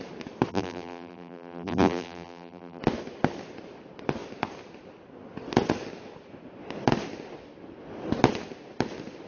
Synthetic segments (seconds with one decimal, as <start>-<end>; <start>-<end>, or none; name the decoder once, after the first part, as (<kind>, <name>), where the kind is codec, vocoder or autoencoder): 0.5-2.8 (vocoder, BigVGAN v2)